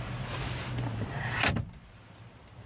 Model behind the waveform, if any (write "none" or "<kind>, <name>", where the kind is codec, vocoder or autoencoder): vocoder, BigVGAN v2